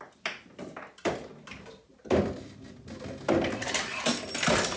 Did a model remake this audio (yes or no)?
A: no